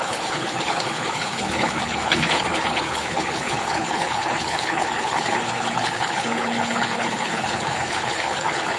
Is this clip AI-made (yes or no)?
yes